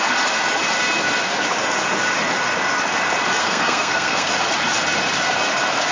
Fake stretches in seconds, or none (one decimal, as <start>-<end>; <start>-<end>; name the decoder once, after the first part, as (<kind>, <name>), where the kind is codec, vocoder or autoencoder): 3.4-4.3 (codec, SNAC)